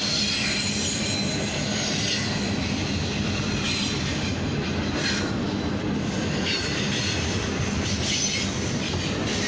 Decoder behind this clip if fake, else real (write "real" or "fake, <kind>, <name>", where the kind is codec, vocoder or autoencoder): real